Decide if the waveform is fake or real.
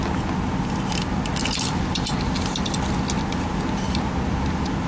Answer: real